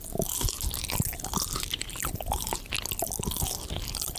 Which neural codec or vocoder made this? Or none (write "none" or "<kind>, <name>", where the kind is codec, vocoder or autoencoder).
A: none